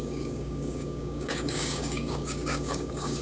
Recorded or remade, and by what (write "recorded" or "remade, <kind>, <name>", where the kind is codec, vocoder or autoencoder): remade, codec, DAC